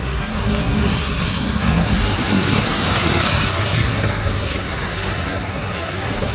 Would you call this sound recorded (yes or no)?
no